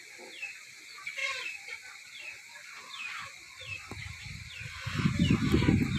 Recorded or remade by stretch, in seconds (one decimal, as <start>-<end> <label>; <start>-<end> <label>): 0.0-1.2 recorded; 1.2-4.8 remade; 4.8-6.0 recorded